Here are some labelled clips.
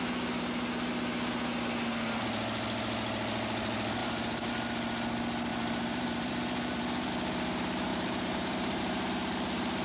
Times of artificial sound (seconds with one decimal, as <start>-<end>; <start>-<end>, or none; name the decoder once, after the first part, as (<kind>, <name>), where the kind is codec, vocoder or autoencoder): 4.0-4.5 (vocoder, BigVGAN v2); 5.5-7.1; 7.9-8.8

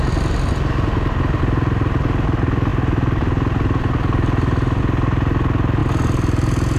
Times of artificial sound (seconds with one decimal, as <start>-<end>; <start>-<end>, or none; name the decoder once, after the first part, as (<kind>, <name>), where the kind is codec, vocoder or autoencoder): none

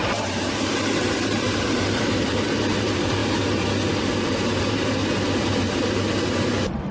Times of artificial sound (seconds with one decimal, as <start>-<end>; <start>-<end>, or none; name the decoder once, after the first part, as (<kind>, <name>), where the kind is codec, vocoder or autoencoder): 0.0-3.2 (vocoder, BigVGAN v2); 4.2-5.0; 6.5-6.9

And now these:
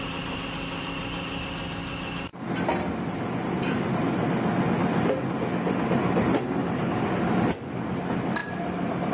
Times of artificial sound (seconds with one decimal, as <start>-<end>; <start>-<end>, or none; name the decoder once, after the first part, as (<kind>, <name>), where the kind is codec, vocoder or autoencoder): 3.4-4.3 (vocoder, BigVGAN v2); 6.6-7.2

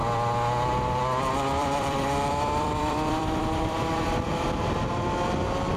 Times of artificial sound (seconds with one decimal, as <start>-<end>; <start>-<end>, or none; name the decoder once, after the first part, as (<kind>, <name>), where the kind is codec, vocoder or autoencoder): 1.6-4.6 (vocoder, BigVGAN v2)